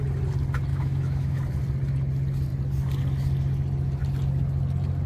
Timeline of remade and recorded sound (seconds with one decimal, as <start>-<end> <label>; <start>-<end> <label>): 0.0-0.7 recorded; 0.7-1.4 remade; 1.4-5.1 recorded